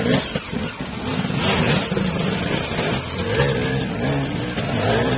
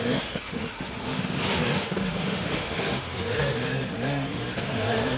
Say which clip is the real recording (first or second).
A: first